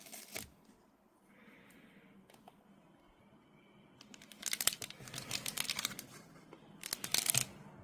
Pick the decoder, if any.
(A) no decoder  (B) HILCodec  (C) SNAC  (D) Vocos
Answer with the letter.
A